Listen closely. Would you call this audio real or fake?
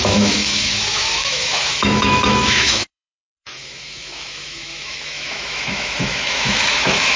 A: fake